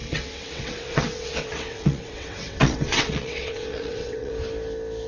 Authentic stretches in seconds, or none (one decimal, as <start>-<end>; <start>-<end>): 4.3-5.1